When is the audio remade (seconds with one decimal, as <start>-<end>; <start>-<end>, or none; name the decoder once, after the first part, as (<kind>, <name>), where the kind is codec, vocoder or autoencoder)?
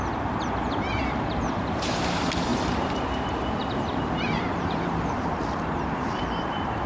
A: 0.0-6.9 (vocoder, BigVGAN v2)